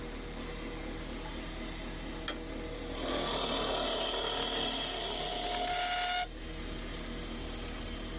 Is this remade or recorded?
recorded